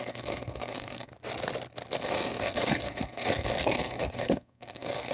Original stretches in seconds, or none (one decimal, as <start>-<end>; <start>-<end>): 1.1-2.0